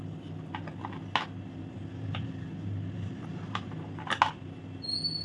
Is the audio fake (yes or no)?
no